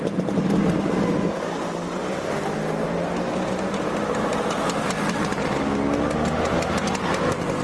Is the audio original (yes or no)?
yes